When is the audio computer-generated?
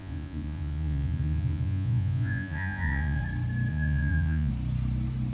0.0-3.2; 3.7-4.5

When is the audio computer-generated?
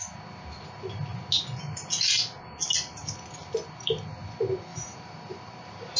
4.7-6.0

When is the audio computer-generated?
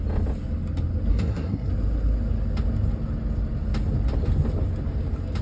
1.1-1.7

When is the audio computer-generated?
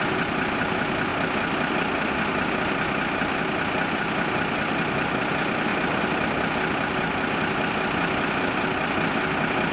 none